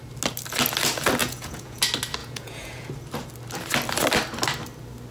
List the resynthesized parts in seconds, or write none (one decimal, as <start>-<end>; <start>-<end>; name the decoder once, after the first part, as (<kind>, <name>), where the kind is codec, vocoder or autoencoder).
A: 1.2-1.8 (vocoder, Vocos); 2.2-2.9